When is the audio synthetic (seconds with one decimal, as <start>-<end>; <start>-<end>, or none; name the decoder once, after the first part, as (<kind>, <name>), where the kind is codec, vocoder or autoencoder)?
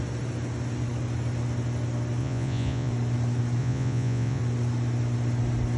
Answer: 2.2-2.9 (vocoder, Vocos); 3.6-4.4